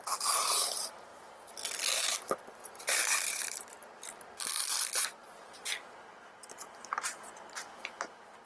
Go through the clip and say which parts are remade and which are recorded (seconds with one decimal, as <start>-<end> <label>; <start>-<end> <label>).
0.0-1.1 remade; 1.1-2.7 recorded; 2.7-3.8 remade; 3.8-8.0 recorded; 8.0-8.5 remade